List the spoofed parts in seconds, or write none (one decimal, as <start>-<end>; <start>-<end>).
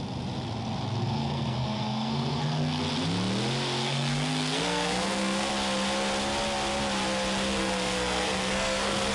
1.0-2.8; 3.8-5.5; 7.6-9.1